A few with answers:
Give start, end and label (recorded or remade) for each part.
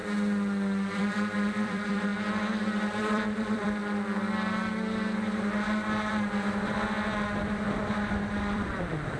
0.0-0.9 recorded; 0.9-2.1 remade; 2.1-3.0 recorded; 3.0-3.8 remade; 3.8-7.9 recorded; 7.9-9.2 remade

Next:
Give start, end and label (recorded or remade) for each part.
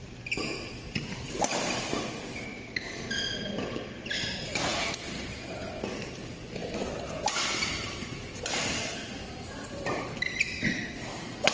0.0-11.5 recorded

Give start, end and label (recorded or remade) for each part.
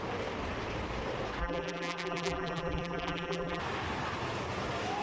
0.0-1.4 recorded; 1.4-3.6 remade; 3.6-5.0 recorded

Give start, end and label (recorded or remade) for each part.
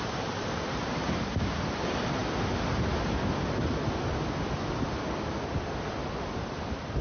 0.0-2.2 remade; 2.2-6.2 recorded; 6.2-7.0 remade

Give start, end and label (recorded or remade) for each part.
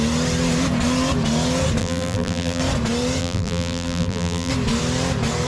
0.0-1.8 recorded; 1.8-2.6 remade; 2.6-3.2 recorded; 3.2-4.5 remade; 4.5-5.5 recorded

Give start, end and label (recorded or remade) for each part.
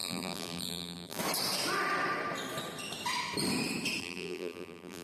0.0-1.2 remade; 1.2-4.0 recorded; 4.0-5.0 remade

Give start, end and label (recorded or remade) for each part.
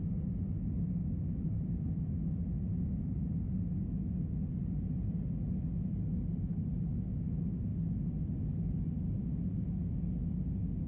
0.0-1.0 recorded; 1.0-2.0 remade; 2.0-4.5 recorded; 4.5-5.3 remade; 5.3-10.9 recorded